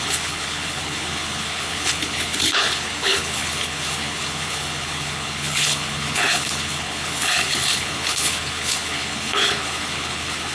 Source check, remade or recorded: remade